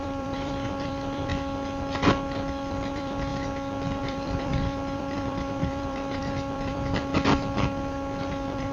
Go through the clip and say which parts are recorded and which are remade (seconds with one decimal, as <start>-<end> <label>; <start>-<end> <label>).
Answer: 0.0-1.3 remade; 1.3-2.9 recorded; 2.9-3.3 remade; 3.3-4.0 recorded; 4.0-7.1 remade; 7.1-8.2 recorded; 8.2-8.7 remade

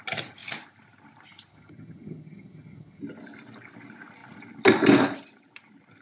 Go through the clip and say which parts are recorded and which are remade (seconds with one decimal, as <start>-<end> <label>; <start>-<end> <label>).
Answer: 0.0-1.5 recorded; 1.5-3.0 remade; 3.0-6.0 recorded

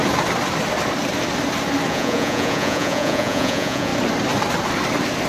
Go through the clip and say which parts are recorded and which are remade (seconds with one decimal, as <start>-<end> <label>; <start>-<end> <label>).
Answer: 0.0-1.9 recorded; 1.9-3.9 remade; 3.9-5.3 recorded

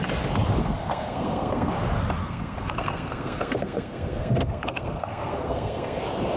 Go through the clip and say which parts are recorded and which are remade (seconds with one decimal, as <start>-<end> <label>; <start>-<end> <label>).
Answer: 0.0-0.6 recorded; 0.6-1.7 remade; 1.7-2.2 recorded; 2.2-6.0 remade; 6.0-6.4 recorded

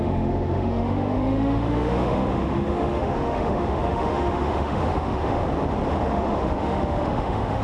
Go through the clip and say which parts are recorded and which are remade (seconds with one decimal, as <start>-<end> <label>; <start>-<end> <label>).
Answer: 0.0-5.4 remade; 5.4-6.1 recorded; 6.1-7.6 remade